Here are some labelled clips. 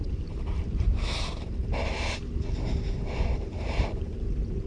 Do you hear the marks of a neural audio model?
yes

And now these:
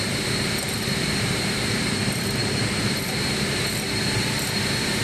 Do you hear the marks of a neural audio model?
yes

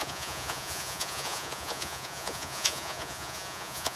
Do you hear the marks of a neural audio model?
yes